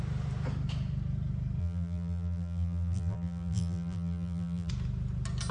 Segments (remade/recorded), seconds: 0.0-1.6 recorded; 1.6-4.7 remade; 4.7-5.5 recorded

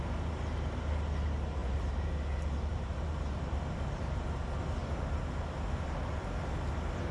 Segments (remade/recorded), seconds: 0.0-1.6 recorded; 1.6-2.1 remade; 2.1-2.7 recorded; 2.7-3.7 remade; 3.7-7.1 recorded

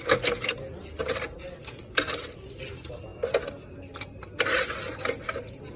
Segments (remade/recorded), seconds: 0.0-5.8 recorded

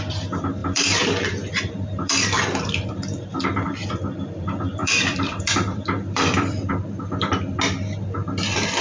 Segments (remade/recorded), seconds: 0.0-0.6 recorded; 0.6-3.9 remade; 3.9-4.8 recorded; 4.8-6.7 remade; 6.7-8.8 recorded

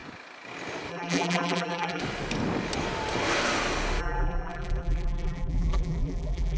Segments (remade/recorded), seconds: 0.0-0.9 recorded; 0.9-2.0 remade; 2.0-4.0 recorded; 4.0-6.6 remade

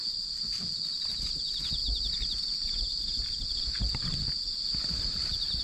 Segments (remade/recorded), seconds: 0.0-0.9 recorded; 0.9-1.4 remade; 1.4-1.8 recorded; 1.8-3.6 remade; 3.6-4.7 recorded; 4.7-5.6 remade

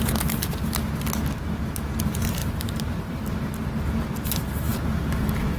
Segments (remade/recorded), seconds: 0.0-2.4 recorded; 2.4-3.5 remade; 3.5-4.7 recorded; 4.7-5.6 remade

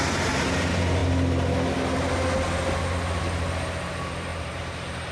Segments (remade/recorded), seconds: 0.0-4.3 recorded; 4.3-5.1 remade